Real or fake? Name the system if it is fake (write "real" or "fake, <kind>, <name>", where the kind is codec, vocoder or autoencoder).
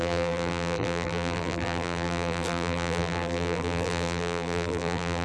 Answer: fake, vocoder, BigVGAN v2